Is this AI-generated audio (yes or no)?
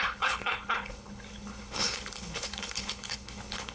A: yes